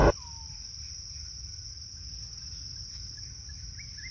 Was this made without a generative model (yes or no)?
yes